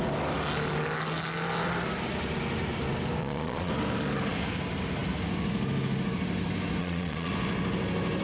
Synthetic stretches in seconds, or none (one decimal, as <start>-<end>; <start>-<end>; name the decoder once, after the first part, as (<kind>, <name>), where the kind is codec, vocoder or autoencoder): 3.2-3.7 (vocoder, Vocos); 6.8-7.3